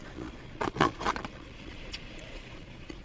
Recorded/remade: remade